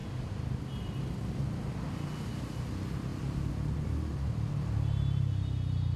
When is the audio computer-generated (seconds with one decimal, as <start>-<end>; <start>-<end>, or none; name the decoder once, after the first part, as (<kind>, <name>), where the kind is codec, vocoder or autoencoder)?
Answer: none